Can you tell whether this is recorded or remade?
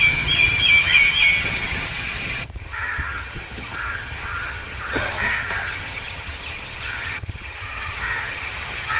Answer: remade